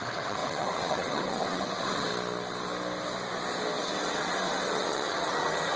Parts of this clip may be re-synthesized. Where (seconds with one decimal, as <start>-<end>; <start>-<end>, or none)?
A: 0.0-2.1; 3.8-5.8